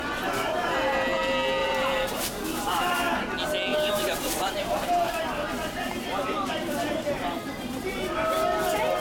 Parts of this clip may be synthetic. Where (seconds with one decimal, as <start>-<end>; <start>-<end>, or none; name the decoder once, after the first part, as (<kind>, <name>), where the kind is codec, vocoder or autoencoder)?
1.6-2.9 (vocoder, BigVGAN v2); 3.7-8.1